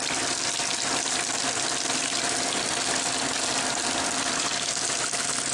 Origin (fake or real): real